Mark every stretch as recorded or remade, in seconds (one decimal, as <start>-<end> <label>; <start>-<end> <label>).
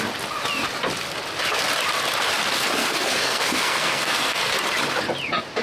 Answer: 0.0-2.8 recorded; 2.8-4.5 remade; 4.5-5.6 recorded